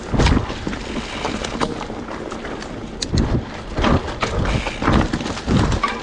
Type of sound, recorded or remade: recorded